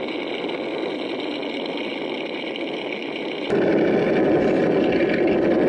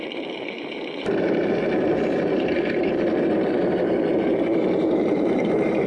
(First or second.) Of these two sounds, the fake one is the second